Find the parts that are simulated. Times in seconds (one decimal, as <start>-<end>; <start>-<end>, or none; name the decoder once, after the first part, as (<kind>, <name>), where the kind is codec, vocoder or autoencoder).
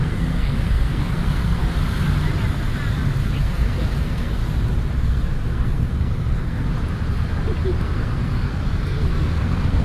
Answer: 0.0-1.6 (codec, SNAC); 3.4-4.4; 5.0-6.7; 7.8-9.8